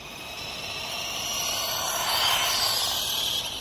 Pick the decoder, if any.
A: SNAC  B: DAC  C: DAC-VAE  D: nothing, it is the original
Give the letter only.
D